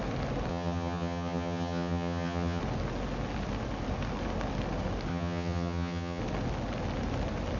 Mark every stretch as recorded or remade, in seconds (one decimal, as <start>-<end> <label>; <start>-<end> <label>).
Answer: 0.0-0.5 recorded; 0.5-2.6 remade; 2.6-5.1 recorded; 5.1-6.2 remade; 6.2-7.6 recorded